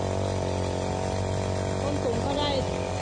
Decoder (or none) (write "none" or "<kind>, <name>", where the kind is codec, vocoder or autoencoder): none